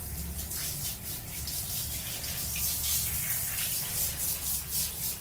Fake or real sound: real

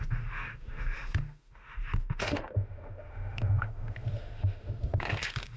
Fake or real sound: fake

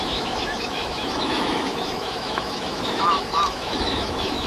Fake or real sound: fake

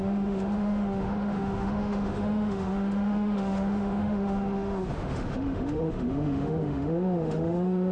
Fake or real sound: fake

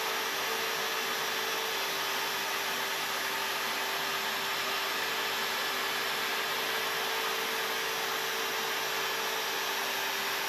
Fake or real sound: real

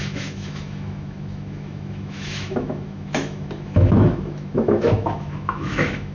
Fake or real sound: fake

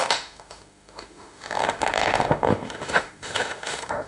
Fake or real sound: fake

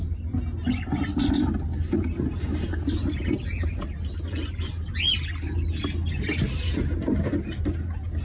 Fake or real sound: real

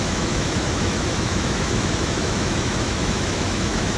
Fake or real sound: fake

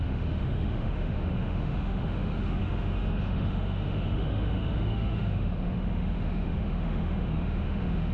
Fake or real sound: fake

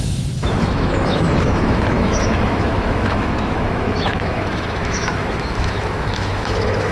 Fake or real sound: fake